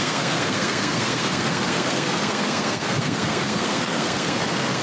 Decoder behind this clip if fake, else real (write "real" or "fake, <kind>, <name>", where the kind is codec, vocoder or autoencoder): fake, codec, SNAC